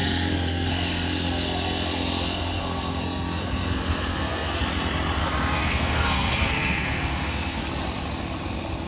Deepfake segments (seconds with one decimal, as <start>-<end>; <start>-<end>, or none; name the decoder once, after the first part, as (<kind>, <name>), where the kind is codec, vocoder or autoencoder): 0.0-4.6 (codec, SNAC); 5.2-7.6